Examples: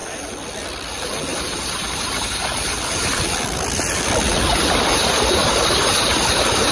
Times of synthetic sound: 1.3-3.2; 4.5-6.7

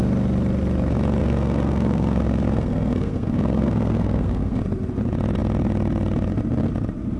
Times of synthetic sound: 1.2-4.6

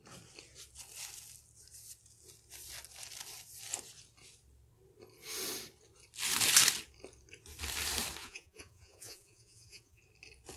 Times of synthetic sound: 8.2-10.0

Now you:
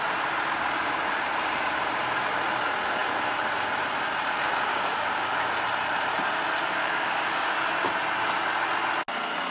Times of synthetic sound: 4.7-5.4; 6.8-7.5

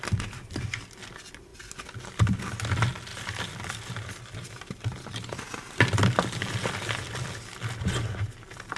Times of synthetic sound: 3.1-3.9